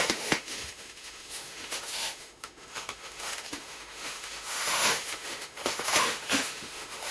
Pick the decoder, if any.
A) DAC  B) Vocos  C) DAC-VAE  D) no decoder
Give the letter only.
C